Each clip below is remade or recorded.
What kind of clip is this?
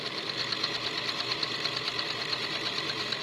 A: recorded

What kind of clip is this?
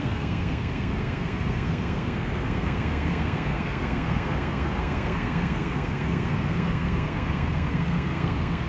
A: remade